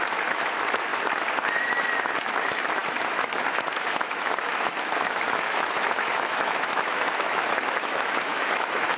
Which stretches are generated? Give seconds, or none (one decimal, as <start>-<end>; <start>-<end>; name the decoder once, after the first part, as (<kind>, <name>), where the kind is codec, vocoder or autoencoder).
0.0-0.9 (autoencoder, DAC-VAE); 2.2-9.0